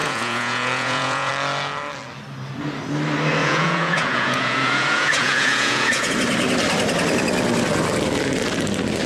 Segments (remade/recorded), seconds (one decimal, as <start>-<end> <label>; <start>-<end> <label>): 0.0-1.3 remade; 1.3-3.4 recorded; 3.4-6.1 remade; 6.1-9.1 recorded